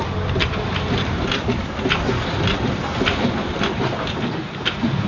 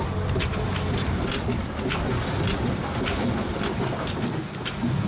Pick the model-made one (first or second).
first